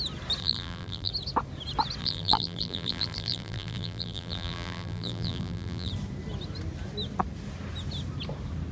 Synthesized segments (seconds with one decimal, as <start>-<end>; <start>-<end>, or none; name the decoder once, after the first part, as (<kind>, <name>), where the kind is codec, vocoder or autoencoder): 0.4-1.1 (vocoder, BigVGAN v2); 2.0-5.9